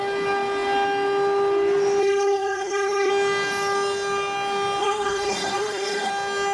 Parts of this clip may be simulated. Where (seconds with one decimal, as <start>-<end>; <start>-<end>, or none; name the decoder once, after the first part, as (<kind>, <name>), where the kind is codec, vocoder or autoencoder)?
2.0-3.1 (codec, SNAC); 4.8-6.1